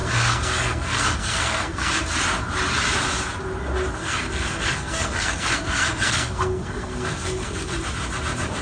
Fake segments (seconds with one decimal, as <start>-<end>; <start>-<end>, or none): 0.0-1.9; 4.0-7.7